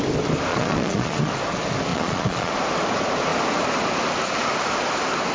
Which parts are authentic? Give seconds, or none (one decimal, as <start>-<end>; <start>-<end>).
0.0-0.5; 1.3-1.9; 2.5-5.3